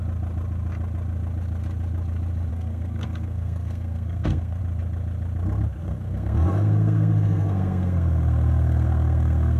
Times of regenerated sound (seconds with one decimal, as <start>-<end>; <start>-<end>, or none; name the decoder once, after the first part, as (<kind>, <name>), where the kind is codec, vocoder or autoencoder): 2.5-4.6 (codec, SNAC); 5.8-9.6